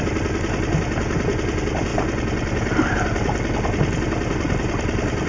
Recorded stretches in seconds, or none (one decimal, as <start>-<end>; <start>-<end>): 0.0-5.3